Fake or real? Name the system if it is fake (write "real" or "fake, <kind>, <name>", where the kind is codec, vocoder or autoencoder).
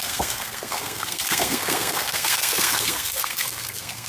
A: fake, codec, SNAC